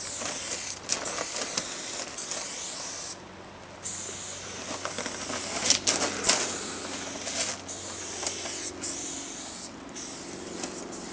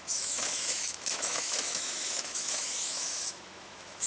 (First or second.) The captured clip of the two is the first